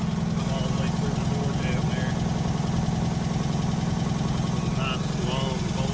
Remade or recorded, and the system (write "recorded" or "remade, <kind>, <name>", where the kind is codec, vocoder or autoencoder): recorded